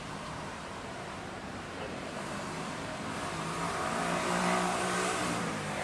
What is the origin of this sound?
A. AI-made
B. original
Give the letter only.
A